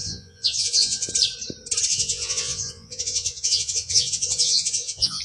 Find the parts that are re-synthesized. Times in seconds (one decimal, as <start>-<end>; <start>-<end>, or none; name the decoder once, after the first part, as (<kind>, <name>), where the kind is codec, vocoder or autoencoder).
0.0-1.1 (vocoder, Vocos); 1.9-5.2